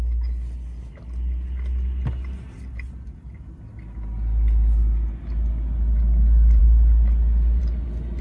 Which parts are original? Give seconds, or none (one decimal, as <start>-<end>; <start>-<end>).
0.0-8.2